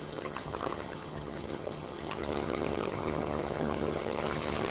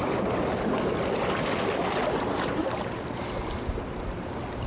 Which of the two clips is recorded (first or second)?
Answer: second